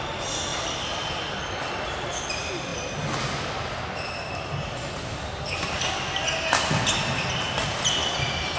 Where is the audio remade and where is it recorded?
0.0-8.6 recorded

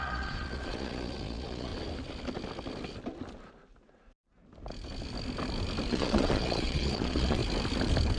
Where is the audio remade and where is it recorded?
0.0-1.7 remade; 1.7-5.9 recorded; 5.9-7.4 remade; 7.4-8.2 recorded

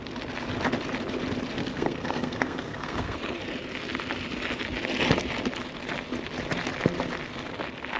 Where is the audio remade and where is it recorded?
0.0-1.6 recorded; 1.6-3.2 remade; 3.2-8.0 recorded

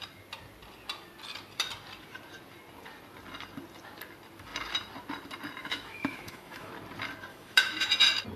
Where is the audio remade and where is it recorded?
0.0-5.6 recorded; 5.6-6.7 remade; 6.7-7.3 recorded; 7.3-7.9 remade; 7.9-8.4 recorded

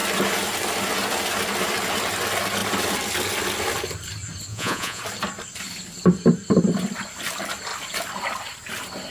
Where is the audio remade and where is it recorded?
0.0-4.5 recorded; 4.5-5.0 remade; 5.0-9.1 recorded

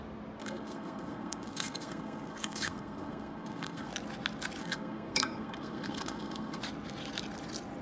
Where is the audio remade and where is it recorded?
0.0-0.4 recorded; 0.4-3.9 remade; 3.9-4.6 recorded; 4.6-6.6 remade; 6.6-7.8 recorded

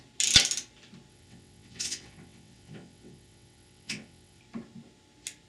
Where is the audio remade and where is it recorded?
0.0-1.1 recorded; 1.1-4.4 remade; 4.4-5.5 recorded